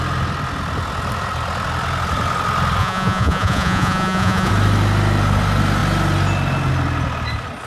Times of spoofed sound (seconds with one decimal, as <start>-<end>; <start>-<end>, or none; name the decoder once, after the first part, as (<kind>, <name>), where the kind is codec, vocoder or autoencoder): 2.8-4.5 (vocoder, Vocos)